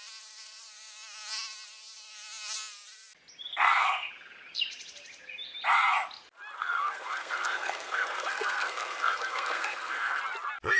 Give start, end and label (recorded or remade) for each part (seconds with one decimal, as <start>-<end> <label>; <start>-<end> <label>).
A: 0.0-3.5 recorded; 3.5-4.1 remade; 4.1-6.6 recorded; 6.6-10.2 remade; 10.2-10.8 recorded